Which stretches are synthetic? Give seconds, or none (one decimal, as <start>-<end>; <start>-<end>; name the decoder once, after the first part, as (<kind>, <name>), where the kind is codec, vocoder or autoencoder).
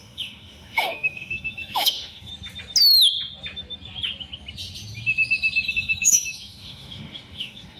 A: 0.0-2.3 (autoencoder, DAC-VAE); 5.7-7.8